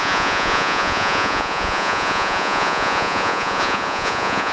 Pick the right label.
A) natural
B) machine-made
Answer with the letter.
B